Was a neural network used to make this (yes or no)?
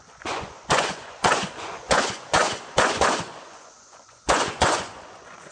yes